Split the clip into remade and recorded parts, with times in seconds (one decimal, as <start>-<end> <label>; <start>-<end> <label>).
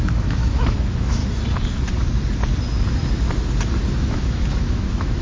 0.0-1.2 remade; 1.2-4.0 recorded; 4.0-5.2 remade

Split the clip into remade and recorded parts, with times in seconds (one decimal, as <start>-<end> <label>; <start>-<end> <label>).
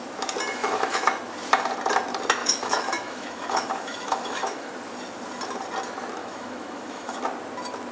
0.0-0.6 recorded; 0.6-1.2 remade; 1.2-2.4 recorded; 2.4-4.7 remade; 4.7-6.2 recorded; 6.2-7.2 remade; 7.2-7.9 recorded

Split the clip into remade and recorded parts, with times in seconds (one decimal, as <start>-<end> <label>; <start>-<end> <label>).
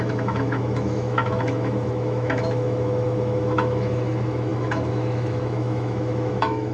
0.0-6.7 remade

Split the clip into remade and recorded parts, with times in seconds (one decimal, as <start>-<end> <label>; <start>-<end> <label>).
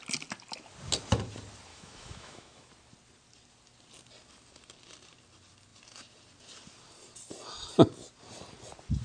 0.0-1.7 recorded; 1.7-2.7 remade; 2.7-9.0 recorded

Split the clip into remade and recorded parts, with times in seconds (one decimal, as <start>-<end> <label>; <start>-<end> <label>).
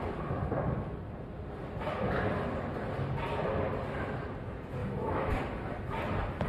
0.0-4.8 recorded; 4.8-5.3 remade; 5.3-6.5 recorded